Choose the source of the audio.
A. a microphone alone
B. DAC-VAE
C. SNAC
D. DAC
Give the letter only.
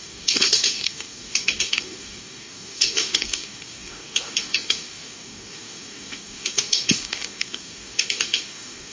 D